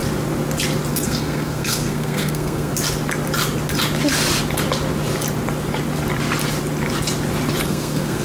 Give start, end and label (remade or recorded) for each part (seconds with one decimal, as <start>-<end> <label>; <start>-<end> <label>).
0.0-0.9 recorded; 0.9-2.7 remade; 2.7-7.6 recorded; 7.6-8.2 remade